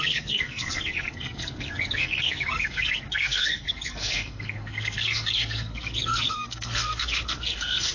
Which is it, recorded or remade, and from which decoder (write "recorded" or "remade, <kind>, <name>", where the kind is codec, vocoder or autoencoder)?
remade, codec, SNAC